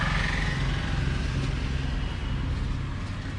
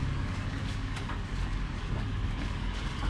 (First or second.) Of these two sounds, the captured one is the first